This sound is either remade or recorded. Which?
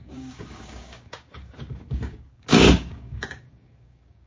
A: remade